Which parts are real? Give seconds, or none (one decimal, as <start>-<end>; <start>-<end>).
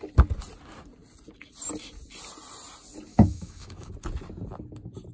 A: 0.0-3.1; 3.9-5.1